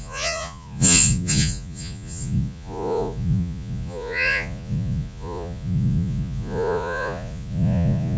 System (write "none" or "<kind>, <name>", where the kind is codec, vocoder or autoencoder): vocoder, Vocos